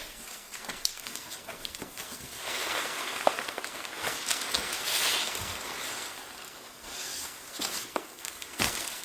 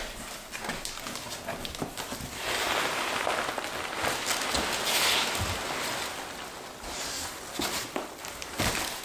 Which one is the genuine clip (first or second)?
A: second